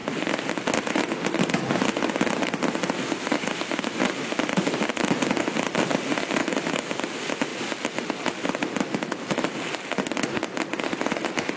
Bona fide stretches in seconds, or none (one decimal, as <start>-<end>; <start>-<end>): 0.0-6.4; 6.9-11.6